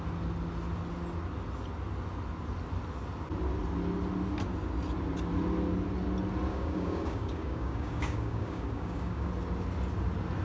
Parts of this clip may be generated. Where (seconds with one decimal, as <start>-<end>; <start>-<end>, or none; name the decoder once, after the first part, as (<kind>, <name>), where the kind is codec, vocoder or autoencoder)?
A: 6.5-9.3 (codec, DAC)